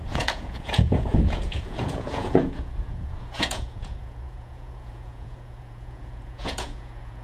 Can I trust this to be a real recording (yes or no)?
no